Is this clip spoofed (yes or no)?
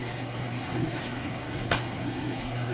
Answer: yes